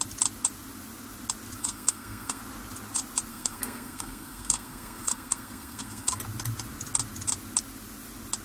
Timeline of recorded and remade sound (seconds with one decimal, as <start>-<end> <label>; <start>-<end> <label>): 0.0-1.6 recorded; 1.6-2.4 remade; 2.4-3.3 recorded; 3.3-6.2 remade; 6.2-8.4 recorded